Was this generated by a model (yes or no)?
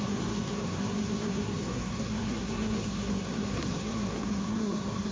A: yes